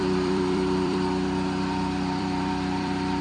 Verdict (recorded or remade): remade